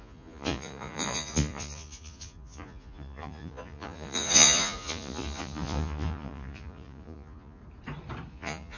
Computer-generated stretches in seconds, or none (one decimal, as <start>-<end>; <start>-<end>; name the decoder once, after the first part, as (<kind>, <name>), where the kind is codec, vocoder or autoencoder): 0.0-7.6 (vocoder, Vocos); 8.3-8.8